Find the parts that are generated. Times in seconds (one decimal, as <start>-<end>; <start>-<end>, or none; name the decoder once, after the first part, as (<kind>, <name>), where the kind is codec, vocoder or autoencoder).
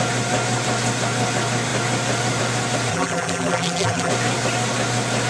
2.9-4.1 (vocoder, BigVGAN v2)